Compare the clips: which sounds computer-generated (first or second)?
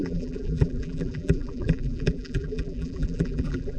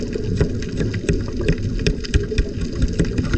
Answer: first